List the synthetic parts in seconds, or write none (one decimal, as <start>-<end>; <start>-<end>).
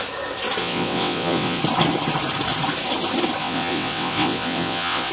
0.6-1.6; 3.4-5.1